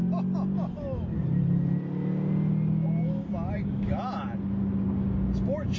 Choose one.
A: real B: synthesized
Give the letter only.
A